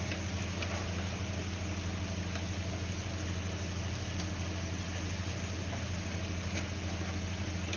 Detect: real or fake real